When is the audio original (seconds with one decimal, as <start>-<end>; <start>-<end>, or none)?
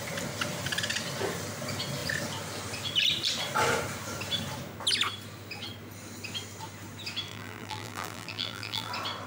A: 0.0-7.3; 8.9-9.3